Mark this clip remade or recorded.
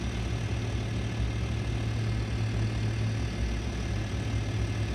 recorded